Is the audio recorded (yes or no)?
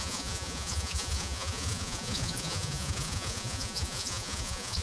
no